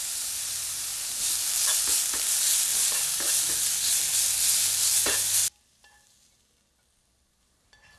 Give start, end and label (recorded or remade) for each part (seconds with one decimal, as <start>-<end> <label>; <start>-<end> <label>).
0.0-8.0 recorded